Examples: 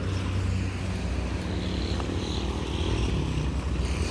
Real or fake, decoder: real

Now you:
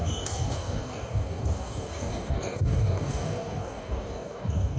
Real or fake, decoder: fake, codec, DAC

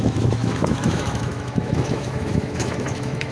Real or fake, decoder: fake, autoencoder, DAC-VAE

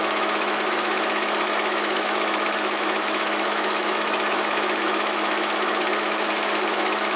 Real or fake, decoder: fake, autoencoder, DAC-VAE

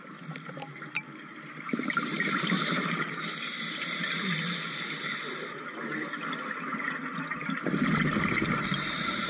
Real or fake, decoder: real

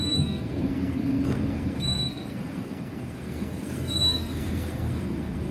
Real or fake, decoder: fake, codec, SNAC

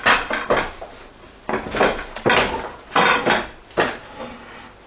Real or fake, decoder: real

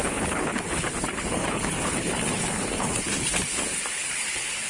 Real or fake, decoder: fake, codec, HILCodec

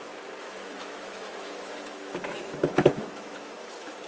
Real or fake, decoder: fake, autoencoder, DAC-VAE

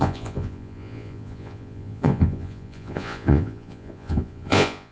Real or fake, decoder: fake, vocoder, Vocos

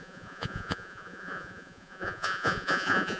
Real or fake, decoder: fake, vocoder, Vocos